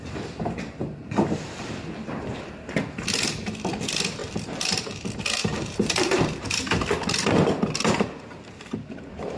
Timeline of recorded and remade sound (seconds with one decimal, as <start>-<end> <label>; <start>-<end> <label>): 0.0-4.2 recorded; 4.2-4.8 remade; 4.8-5.4 recorded; 5.4-6.6 remade; 6.6-9.4 recorded